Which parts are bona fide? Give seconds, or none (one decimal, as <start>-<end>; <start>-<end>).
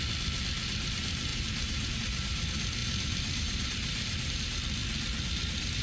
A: 0.0-1.3; 1.9-2.8; 4.3-5.8